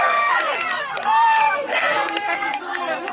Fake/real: fake